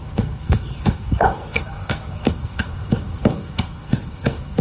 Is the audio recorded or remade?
remade